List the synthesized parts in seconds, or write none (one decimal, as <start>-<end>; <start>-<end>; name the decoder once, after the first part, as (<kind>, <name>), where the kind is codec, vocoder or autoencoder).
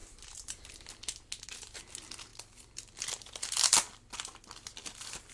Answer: 0.0-0.8 (vocoder, BigVGAN v2); 2.3-5.3